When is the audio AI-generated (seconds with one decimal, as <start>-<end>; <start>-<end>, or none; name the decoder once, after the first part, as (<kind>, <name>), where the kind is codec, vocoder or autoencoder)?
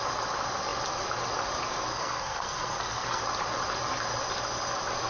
1.9-3.2 (codec, SNAC)